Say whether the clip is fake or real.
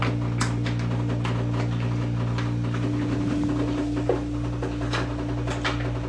real